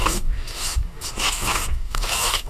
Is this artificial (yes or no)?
yes